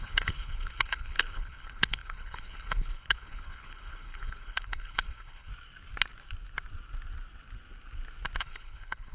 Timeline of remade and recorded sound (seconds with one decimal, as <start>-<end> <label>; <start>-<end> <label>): 0.0-5.5 remade; 5.5-8.4 recorded; 8.4-9.1 remade

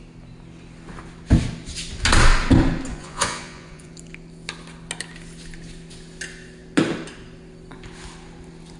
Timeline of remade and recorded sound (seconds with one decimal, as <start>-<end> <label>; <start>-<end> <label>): 0.0-2.9 recorded; 2.9-3.9 remade; 3.9-8.8 recorded

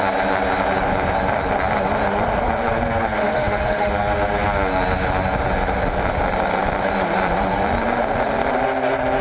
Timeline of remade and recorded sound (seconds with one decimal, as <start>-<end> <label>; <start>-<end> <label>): 0.0-3.2 recorded; 3.2-3.9 remade; 3.9-9.2 recorded

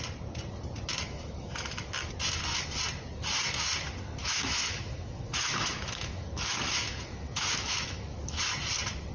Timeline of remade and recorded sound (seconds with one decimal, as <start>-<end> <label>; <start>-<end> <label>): 0.0-0.9 recorded; 0.9-2.1 remade; 2.1-4.2 recorded; 4.2-8.4 remade; 8.4-9.1 recorded

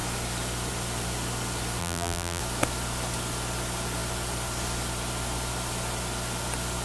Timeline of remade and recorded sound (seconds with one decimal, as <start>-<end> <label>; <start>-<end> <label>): 0.0-1.8 recorded; 1.8-2.4 remade; 2.4-6.8 recorded

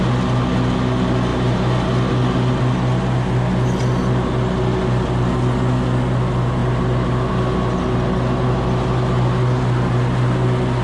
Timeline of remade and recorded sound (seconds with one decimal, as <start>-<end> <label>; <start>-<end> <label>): 0.0-10.8 recorded